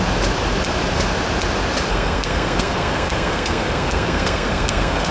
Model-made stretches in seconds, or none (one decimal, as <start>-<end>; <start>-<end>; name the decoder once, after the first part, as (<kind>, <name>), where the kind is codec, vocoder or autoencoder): 1.9-5.1 (codec, SNAC)